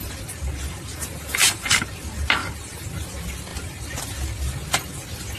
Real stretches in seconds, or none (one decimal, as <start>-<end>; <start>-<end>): 0.0-1.1; 1.8-2.4; 2.9-5.4